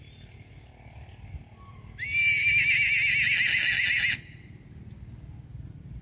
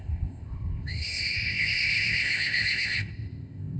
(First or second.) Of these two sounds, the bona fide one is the first